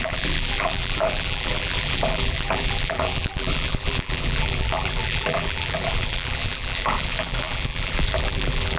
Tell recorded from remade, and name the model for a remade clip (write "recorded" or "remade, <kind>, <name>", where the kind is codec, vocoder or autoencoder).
remade, vocoder, BigVGAN v2